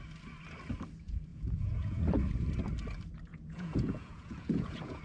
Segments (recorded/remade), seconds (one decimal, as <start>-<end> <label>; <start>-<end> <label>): 0.0-1.3 recorded; 1.3-2.0 remade; 2.0-3.3 recorded; 3.3-5.0 remade